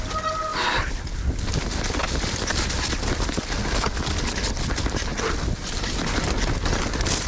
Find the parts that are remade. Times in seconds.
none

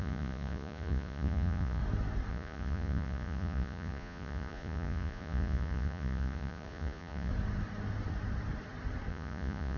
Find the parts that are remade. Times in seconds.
0.0-1.8 (vocoder, Vocos); 2.3-7.3; 9.1-9.8

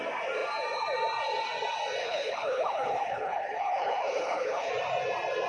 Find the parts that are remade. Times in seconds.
2.0-4.7 (codec, HILCodec)

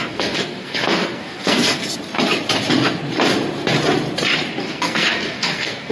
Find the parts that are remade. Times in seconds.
0.0-1.8 (codec, SNAC); 4.6-5.9